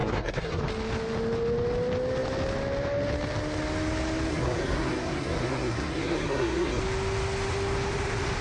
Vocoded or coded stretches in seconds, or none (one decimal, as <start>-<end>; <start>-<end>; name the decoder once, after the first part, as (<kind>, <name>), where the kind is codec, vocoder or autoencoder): 0.0-0.6 (codec, SNAC); 4.3-6.8